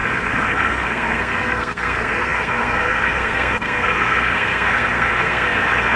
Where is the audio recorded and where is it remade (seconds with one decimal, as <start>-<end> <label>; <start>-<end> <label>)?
0.0-6.0 remade